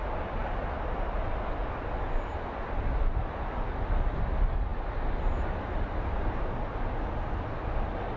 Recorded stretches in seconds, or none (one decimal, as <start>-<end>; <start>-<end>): 0.0-8.2